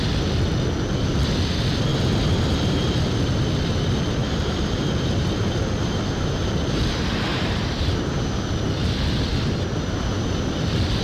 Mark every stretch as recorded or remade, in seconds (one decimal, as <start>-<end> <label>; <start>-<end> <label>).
0.0-1.9 recorded; 1.9-3.0 remade; 3.0-4.2 recorded; 4.2-5.5 remade; 5.5-7.3 recorded; 7.3-8.1 remade; 8.1-11.0 recorded